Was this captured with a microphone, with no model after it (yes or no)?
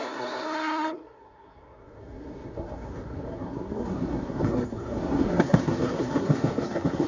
no